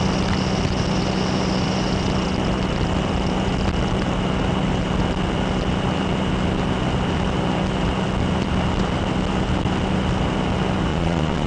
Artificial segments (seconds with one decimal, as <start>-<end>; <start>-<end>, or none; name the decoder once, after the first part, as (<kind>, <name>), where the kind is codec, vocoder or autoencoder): 10.9-11.5 (vocoder, Vocos)